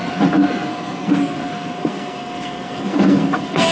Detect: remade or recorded remade